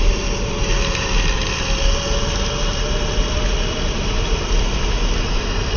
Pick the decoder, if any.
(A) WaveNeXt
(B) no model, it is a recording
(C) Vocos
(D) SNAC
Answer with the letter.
B